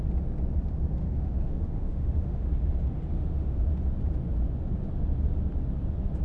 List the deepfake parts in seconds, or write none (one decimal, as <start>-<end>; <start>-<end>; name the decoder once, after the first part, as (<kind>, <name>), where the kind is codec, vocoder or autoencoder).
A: 1.0-2.7 (autoencoder, DAC-VAE); 3.1-3.6